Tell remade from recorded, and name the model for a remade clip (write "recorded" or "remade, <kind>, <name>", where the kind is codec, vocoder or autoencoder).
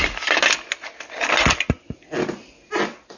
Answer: recorded